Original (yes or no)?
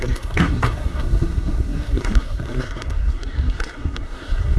no